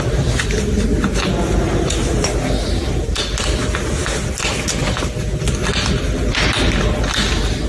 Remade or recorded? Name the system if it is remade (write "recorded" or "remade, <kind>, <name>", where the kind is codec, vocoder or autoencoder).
recorded